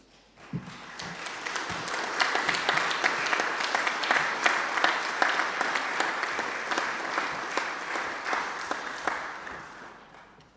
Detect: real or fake real